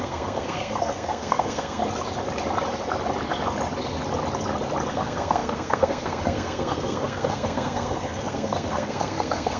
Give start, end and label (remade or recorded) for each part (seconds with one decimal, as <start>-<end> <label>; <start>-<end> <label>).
0.0-1.8 remade; 1.8-4.9 recorded; 4.9-9.6 remade